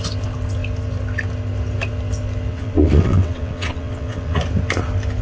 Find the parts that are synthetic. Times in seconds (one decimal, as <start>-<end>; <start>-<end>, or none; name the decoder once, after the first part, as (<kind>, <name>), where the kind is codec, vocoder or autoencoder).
2.5-4.4 (vocoder, WaveNeXt)

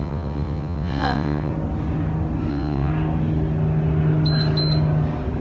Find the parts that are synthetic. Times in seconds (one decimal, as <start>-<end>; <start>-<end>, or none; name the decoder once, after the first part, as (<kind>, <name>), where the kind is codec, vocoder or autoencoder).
0.0-1.5 (vocoder, WaveNeXt); 2.5-2.9

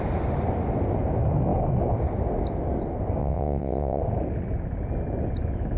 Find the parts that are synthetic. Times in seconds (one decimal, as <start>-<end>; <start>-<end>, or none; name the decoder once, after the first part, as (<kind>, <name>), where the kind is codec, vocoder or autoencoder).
3.2-4.0 (vocoder, WaveNeXt)

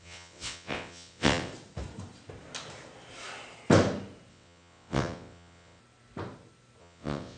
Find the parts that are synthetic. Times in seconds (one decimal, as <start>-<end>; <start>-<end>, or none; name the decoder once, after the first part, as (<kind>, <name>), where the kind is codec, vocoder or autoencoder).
0.0-1.5 (vocoder, WaveNeXt); 4.3-5.8; 6.8-7.4

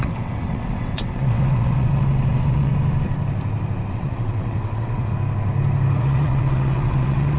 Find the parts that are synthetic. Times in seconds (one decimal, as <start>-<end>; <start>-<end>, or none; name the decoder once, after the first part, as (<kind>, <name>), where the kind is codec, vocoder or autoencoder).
0.0-2.7 (vocoder, WaveNeXt); 3.9-5.1; 6.0-7.4

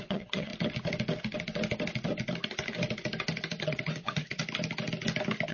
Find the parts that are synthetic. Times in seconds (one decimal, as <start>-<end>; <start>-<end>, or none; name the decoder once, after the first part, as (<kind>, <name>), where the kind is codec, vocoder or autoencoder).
0.0-0.5 (vocoder, WaveNeXt); 3.6-4.4

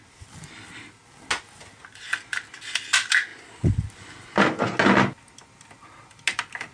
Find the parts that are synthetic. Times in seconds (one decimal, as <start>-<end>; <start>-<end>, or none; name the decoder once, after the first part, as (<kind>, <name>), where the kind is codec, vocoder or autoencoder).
none

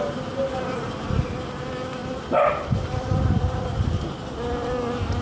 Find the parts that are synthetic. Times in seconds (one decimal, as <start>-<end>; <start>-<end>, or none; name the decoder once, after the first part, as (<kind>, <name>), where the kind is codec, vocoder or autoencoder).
none